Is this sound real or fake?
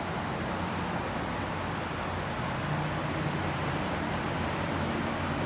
real